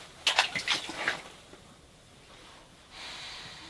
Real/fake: real